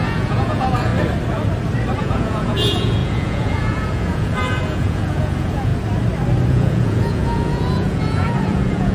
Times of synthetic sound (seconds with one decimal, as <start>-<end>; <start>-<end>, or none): 0.0-0.9; 2.0-5.7; 6.5-8.9